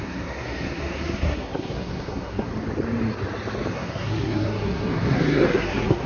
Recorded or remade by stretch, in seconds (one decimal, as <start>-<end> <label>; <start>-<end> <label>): 0.0-2.5 remade; 2.5-3.7 recorded; 3.7-6.1 remade